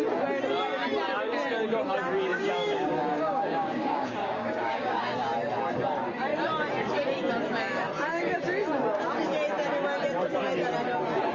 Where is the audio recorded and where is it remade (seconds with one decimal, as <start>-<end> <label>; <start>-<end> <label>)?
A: 0.0-2.3 recorded; 2.3-5.0 remade; 5.0-11.3 recorded